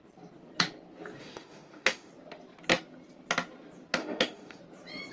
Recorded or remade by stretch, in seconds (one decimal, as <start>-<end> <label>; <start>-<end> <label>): 0.0-1.2 recorded; 1.2-2.1 remade; 2.1-4.0 recorded; 4.0-4.6 remade; 4.6-5.1 recorded